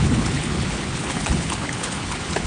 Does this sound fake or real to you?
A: fake